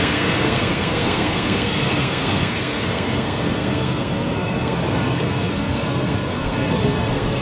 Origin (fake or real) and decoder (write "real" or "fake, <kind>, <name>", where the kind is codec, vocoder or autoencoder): fake, codec, SNAC